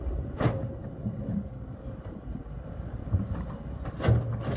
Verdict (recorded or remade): recorded